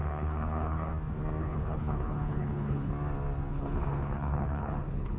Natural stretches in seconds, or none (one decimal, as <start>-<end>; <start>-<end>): 0.9-1.4; 2.9-3.5